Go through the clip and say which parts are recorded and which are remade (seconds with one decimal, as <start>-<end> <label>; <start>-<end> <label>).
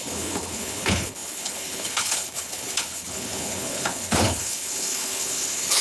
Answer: 0.0-5.8 remade